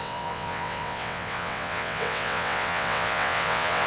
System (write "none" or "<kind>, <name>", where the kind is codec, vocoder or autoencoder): vocoder, WaveNeXt